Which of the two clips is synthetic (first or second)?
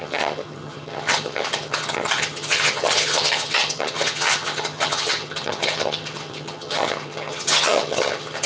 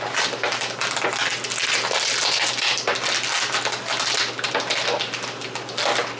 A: first